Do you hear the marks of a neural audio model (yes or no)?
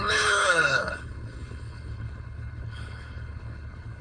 yes